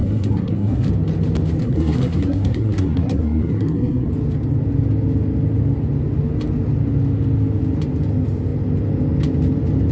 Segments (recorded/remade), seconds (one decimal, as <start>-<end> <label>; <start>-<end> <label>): 0.0-0.9 remade; 0.9-1.6 recorded; 1.6-4.1 remade; 4.1-9.9 recorded